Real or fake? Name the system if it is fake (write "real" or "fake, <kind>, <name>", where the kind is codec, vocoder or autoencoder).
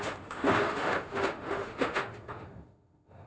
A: fake, autoencoder, DAC-VAE